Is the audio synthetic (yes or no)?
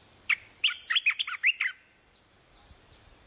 yes